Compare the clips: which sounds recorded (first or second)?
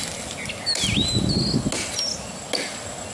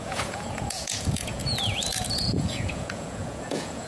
first